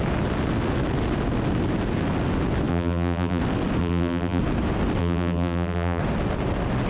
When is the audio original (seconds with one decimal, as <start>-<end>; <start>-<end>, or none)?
0.0-2.7; 3.4-3.8; 4.4-5.0; 6.0-6.9